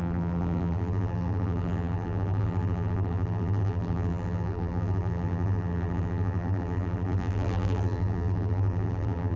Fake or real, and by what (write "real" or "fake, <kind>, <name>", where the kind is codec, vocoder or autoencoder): fake, vocoder, BigVGAN v2